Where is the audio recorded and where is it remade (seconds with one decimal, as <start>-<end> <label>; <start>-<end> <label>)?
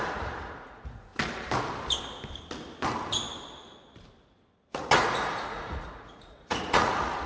0.0-1.1 remade; 1.1-4.9 recorded; 4.9-7.3 remade